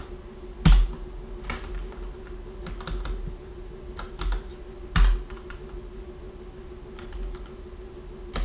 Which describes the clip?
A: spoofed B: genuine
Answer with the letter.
B